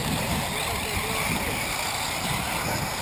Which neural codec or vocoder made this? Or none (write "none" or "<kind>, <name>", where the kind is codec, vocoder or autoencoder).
none